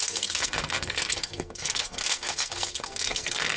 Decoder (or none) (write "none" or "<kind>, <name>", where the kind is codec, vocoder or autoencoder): codec, SNAC